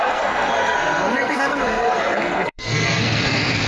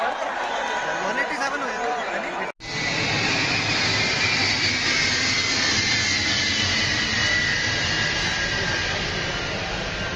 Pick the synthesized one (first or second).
first